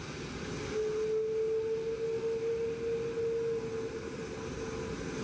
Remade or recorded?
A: recorded